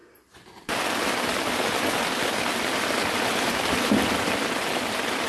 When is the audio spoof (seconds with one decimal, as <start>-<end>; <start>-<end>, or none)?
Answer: 0.0-5.3